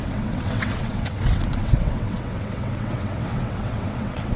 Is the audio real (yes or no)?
no